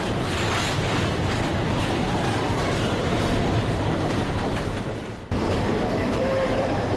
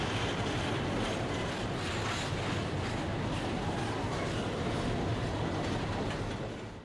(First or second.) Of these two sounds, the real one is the second